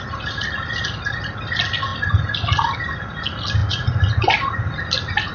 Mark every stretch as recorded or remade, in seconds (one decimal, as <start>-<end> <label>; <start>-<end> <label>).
0.0-3.6 recorded; 3.6-4.2 remade; 4.2-5.3 recorded